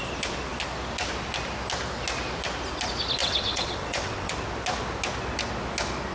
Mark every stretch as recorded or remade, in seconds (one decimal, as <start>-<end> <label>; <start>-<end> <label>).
0.0-3.2 recorded; 3.2-4.3 remade; 4.3-6.1 recorded